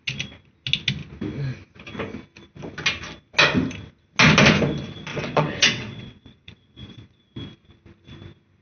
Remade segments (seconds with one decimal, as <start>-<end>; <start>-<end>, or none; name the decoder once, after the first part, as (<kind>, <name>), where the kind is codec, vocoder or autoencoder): 5.1-7.2 (vocoder, WaveNeXt)